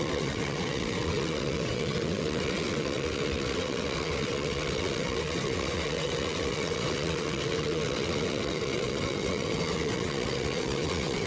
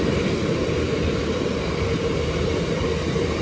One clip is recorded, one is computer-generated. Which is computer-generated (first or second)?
first